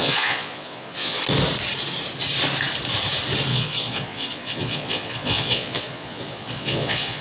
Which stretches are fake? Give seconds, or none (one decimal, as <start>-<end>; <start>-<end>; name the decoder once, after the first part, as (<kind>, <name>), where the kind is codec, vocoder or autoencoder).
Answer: 0.0-1.2 (vocoder, Vocos); 3.5-7.2